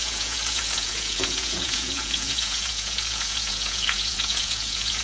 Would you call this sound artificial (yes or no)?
yes